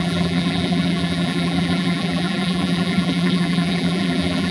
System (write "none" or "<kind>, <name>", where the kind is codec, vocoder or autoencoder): vocoder, BigVGAN v2